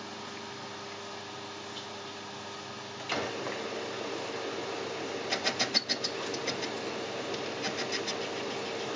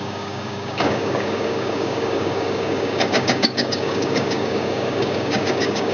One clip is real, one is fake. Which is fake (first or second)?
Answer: second